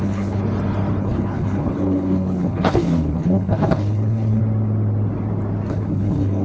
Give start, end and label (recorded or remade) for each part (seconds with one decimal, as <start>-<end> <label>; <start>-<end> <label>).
0.0-0.4 remade; 0.4-1.0 recorded; 1.0-4.4 remade; 4.4-5.7 recorded; 5.7-6.4 remade